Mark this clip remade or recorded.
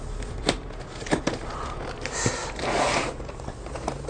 recorded